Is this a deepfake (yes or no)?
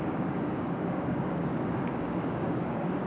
yes